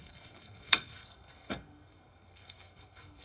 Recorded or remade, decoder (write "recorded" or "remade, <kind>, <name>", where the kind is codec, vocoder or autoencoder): remade, codec, SNAC